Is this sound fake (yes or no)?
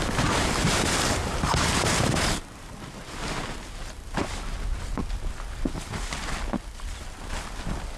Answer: no